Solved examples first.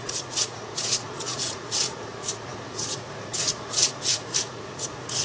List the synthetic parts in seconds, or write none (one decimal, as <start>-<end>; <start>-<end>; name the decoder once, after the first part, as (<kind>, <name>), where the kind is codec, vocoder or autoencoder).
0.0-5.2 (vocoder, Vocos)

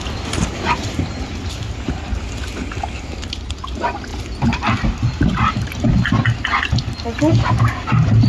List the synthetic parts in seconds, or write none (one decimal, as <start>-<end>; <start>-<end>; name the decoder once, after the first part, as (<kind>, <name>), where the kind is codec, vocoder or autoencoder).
4.1-5.9 (vocoder, BigVGAN v2)

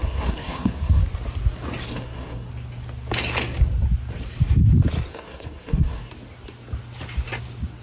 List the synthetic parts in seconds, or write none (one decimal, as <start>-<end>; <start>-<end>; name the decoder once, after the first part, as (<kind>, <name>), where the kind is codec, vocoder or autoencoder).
0.0-1.0 (codec, SNAC); 1.9-2.5; 5.1-6.1

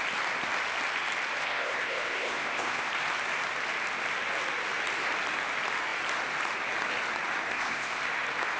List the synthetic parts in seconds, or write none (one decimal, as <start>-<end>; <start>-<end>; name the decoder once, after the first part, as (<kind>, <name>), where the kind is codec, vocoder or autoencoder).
1.4-2.9 (codec, ZipCodec); 7.5-8.0